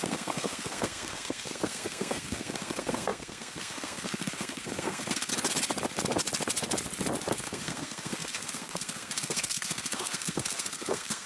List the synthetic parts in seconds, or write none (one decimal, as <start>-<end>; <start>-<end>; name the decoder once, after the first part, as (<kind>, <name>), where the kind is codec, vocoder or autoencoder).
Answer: 0.0-5.3 (codec, SNAC); 7.3-11.3

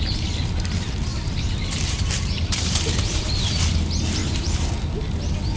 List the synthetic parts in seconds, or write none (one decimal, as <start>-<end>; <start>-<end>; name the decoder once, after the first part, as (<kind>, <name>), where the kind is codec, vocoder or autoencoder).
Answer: 1.1-3.2 (vocoder, BigVGAN v2); 4.2-4.7

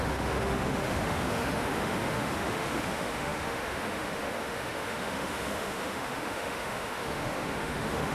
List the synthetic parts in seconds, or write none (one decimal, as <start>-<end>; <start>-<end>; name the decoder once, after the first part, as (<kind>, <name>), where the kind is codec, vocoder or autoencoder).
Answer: 0.0-8.1 (autoencoder, DAC-VAE)

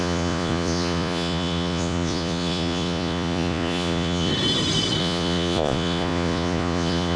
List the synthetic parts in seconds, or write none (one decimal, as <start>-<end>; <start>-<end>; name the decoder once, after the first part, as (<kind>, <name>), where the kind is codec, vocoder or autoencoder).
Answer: 0.0-4.3 (vocoder, Vocos); 5.0-7.2

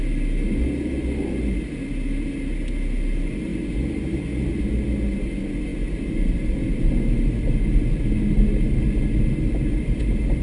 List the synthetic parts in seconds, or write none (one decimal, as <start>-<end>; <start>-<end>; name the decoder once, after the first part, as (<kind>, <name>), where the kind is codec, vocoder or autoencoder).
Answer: none

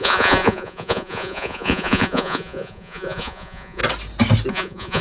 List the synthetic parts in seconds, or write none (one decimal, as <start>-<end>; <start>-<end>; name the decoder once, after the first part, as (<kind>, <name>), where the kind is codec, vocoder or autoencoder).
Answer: 0.0-3.8 (vocoder, Vocos); 4.5-5.0